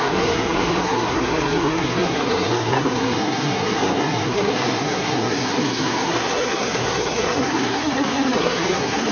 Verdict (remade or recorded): remade